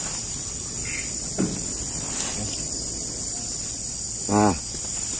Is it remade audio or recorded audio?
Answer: recorded